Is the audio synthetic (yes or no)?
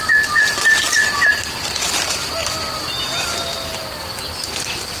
no